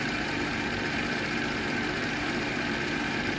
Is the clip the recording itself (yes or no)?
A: no